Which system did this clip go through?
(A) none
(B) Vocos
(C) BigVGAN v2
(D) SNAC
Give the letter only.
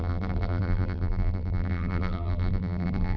C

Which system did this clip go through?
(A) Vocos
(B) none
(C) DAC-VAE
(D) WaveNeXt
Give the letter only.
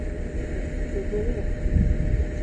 B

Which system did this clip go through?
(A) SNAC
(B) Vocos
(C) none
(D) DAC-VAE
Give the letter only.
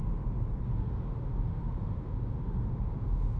D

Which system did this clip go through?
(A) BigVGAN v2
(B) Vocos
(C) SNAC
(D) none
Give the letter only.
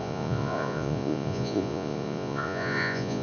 B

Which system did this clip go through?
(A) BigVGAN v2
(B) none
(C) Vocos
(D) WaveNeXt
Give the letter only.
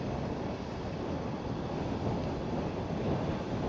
B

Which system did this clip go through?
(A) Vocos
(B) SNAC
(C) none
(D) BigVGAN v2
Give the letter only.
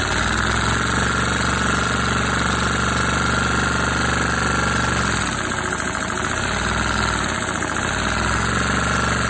C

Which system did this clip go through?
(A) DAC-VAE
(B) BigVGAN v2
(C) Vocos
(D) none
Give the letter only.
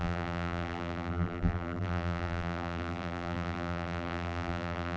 B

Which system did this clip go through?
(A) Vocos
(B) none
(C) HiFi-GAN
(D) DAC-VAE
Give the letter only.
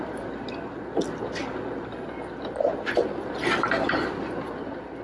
B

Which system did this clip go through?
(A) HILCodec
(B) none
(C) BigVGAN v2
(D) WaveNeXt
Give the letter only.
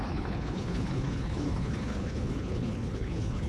A